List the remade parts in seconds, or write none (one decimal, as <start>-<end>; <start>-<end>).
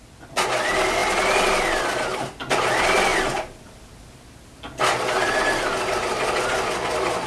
none